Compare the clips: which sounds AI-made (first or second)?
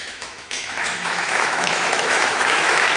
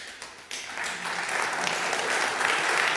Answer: first